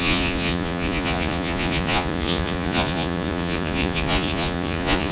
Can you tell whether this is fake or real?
fake